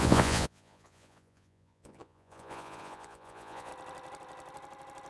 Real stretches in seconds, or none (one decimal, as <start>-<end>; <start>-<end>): 3.7-5.1